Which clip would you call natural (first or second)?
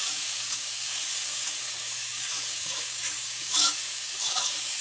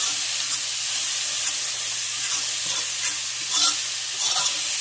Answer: second